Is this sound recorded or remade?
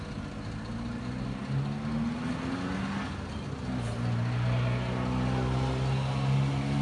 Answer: recorded